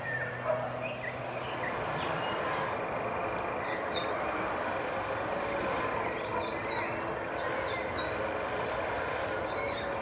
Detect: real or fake real